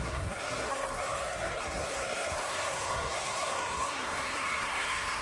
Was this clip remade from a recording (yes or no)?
yes